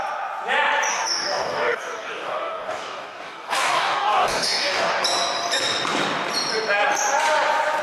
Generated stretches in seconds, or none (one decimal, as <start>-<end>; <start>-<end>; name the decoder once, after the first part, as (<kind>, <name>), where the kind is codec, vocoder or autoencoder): 0.9-5.0 (codec, DAC)

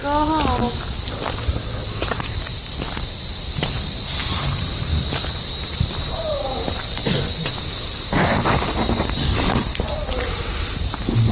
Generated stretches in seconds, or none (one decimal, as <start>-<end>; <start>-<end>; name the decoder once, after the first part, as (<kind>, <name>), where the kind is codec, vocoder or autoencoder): none

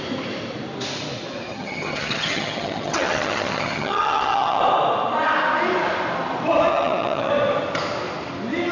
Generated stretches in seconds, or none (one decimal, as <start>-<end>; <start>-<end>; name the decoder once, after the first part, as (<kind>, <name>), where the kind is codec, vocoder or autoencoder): 1.5-4.6 (vocoder, HiFi-GAN); 6.7-7.3

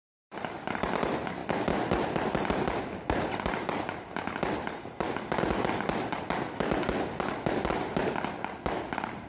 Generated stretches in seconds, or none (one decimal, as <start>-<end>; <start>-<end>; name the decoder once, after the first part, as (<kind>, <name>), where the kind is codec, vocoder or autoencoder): none